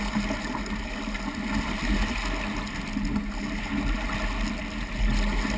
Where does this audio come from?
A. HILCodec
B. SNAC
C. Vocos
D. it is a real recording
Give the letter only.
D